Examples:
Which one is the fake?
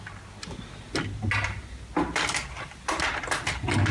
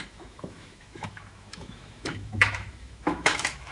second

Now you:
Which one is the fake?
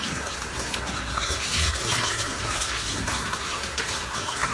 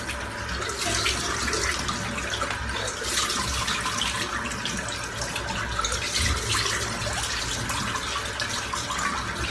first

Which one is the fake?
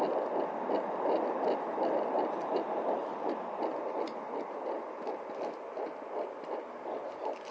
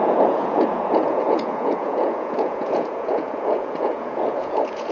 second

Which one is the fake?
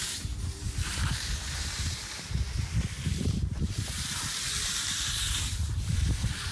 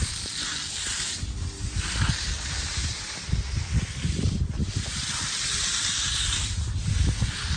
first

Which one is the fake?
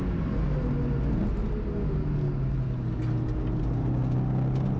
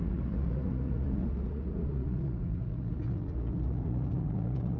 second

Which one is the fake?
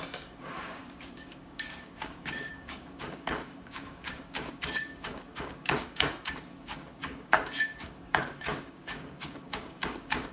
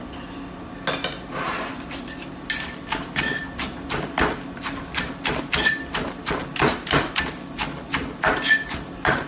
first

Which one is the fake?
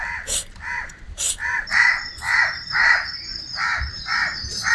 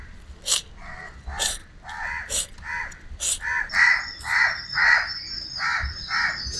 first